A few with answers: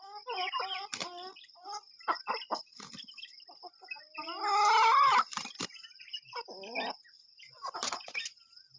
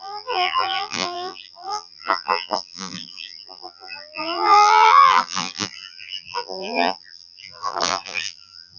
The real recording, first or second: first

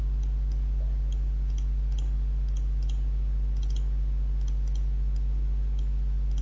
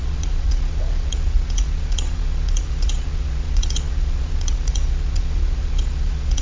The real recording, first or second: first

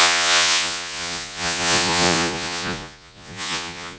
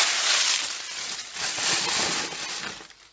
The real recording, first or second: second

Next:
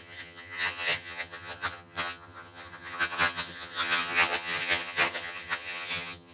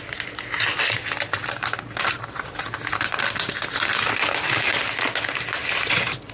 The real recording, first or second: second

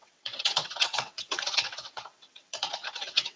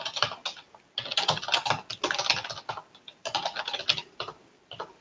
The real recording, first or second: second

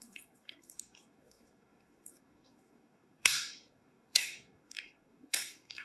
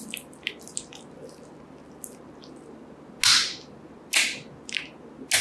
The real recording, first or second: second